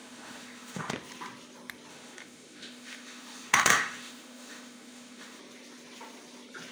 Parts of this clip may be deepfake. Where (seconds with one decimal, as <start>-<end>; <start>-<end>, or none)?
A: 0.0-0.9; 1.9-5.4